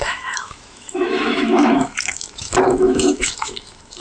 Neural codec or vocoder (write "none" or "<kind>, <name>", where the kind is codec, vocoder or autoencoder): autoencoder, DAC-VAE